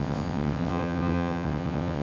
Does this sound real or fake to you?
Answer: fake